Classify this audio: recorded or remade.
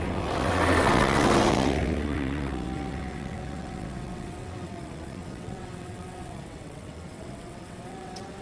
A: remade